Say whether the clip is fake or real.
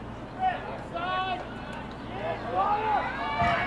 real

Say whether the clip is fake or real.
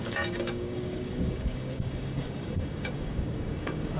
fake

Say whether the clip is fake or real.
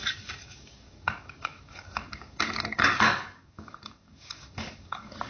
fake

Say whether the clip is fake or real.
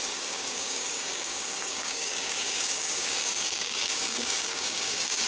fake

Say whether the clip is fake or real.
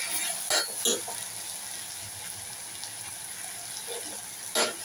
real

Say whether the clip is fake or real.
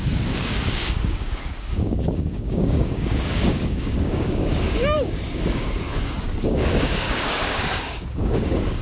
fake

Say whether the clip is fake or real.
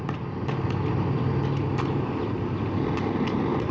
real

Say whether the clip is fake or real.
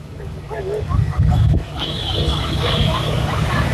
fake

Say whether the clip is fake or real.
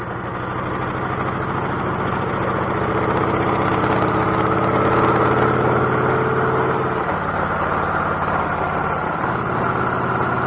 real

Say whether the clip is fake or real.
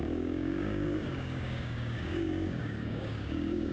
fake